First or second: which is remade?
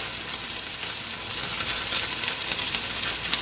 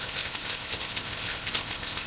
second